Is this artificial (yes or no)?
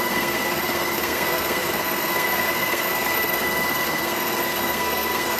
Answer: yes